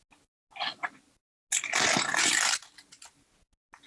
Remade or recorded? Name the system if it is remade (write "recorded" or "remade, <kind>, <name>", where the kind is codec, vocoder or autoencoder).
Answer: recorded